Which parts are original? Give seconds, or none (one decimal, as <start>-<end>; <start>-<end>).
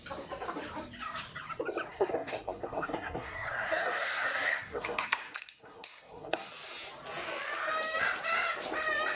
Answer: 0.0-1.9; 6.5-9.2